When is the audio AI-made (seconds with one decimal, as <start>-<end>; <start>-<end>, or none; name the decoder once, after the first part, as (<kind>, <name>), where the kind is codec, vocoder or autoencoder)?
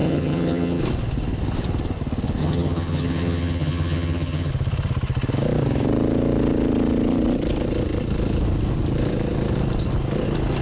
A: 0.0-0.8 (vocoder, HiFi-GAN); 2.4-4.5